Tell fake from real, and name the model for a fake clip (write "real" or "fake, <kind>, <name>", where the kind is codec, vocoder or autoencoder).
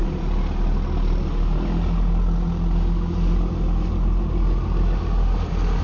real